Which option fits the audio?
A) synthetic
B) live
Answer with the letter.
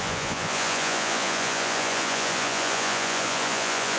A